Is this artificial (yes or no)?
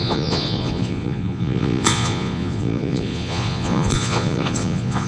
yes